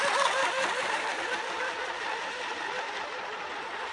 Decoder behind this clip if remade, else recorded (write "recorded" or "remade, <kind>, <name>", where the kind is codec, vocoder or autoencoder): recorded